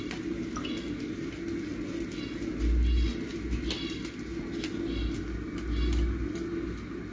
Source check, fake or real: real